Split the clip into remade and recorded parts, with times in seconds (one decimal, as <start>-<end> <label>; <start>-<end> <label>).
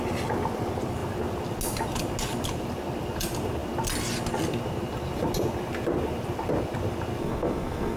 0.0-7.2 recorded; 7.2-8.0 remade